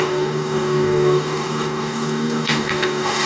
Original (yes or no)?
no